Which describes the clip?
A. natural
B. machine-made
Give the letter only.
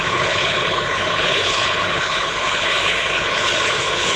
B